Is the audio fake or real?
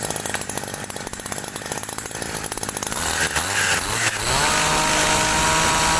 real